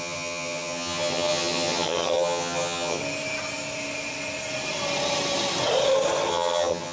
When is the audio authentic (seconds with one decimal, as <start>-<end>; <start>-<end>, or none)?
3.0-6.3